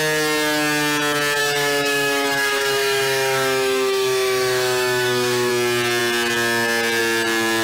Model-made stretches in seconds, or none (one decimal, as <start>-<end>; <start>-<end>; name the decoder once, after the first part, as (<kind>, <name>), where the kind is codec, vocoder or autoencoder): 1.4-5.5 (autoencoder, DAC-VAE)